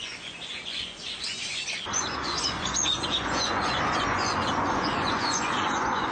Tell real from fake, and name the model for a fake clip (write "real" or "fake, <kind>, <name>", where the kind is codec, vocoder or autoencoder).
fake, vocoder, Vocos